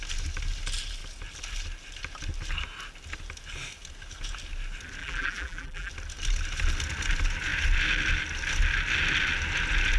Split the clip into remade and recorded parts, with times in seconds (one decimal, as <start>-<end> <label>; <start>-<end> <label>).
0.0-5.0 recorded; 5.0-5.9 remade; 5.9-10.0 recorded